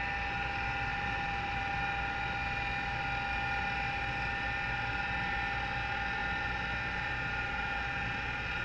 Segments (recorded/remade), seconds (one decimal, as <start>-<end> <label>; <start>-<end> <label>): 0.0-0.9 recorded; 0.9-1.7 remade; 1.7-8.6 recorded